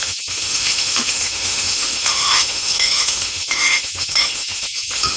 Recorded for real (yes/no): no